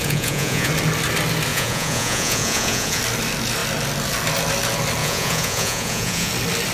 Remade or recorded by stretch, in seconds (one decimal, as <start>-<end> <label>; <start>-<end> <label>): 0.0-0.7 remade; 0.7-1.5 recorded; 1.5-3.0 remade; 3.0-5.0 recorded; 5.0-6.3 remade; 6.3-6.7 recorded